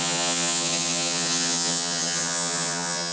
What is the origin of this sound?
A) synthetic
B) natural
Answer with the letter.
A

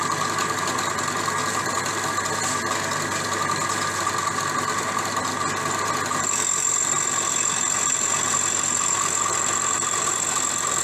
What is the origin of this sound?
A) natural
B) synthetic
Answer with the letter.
A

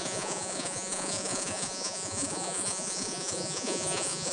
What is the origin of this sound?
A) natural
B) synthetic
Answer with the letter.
B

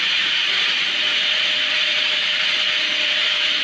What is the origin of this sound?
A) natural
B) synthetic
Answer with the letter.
B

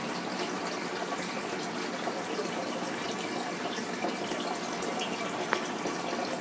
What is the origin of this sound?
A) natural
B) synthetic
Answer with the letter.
A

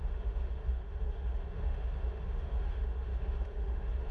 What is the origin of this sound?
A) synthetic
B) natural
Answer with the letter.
A